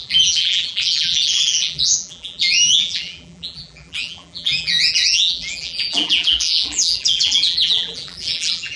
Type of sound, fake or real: fake